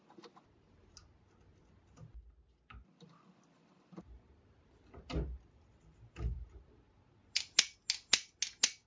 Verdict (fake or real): real